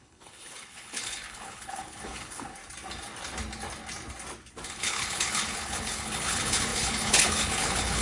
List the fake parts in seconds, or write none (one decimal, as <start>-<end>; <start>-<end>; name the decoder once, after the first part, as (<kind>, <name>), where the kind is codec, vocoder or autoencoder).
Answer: 0.0-2.6 (codec, HILCodec); 4.7-8.0